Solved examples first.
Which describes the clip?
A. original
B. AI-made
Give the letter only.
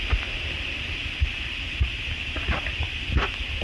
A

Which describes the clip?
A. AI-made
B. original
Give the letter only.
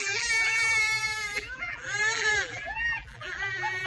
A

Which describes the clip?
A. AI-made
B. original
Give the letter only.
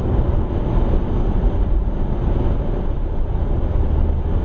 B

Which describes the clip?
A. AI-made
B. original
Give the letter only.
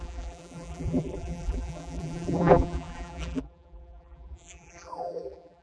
A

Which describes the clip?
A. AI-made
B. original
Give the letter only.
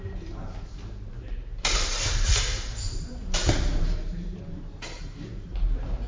A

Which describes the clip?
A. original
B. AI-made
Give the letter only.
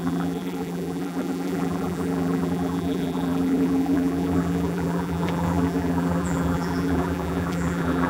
B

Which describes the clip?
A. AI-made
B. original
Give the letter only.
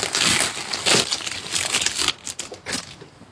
B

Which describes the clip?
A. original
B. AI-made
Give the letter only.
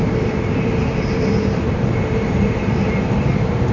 B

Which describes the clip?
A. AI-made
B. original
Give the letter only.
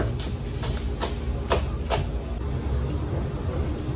B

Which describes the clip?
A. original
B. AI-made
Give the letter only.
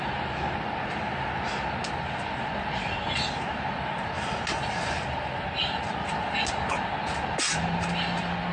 A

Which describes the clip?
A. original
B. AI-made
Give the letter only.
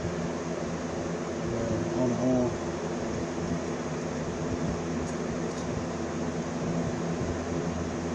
A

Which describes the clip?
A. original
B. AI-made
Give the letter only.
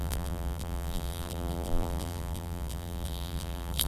B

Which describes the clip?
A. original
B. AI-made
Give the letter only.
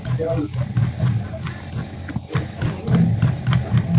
A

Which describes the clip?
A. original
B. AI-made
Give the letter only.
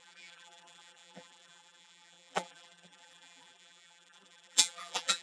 B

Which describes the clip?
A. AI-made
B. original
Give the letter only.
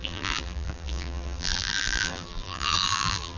A